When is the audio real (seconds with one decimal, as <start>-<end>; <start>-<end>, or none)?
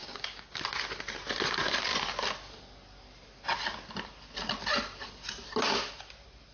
0.6-6.5